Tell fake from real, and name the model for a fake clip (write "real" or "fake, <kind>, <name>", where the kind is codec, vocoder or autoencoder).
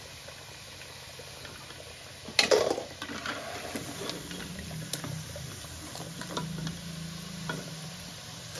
real